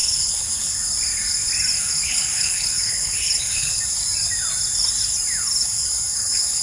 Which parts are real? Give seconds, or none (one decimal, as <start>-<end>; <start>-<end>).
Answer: 0.8-1.8; 3.8-5.6